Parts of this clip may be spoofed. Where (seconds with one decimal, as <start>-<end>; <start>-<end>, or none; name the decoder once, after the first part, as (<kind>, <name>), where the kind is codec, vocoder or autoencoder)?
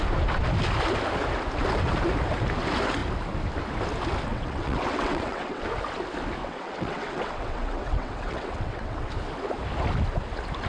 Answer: 4.3-5.6 (vocoder, WaveNeXt); 6.4-9.1